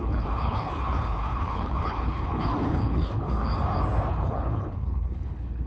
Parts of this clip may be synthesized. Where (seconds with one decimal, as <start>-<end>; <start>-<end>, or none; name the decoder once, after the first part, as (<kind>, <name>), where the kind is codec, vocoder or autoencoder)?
0.0-3.5 (codec, HILCodec); 4.1-5.7